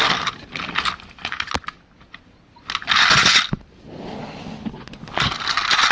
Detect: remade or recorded recorded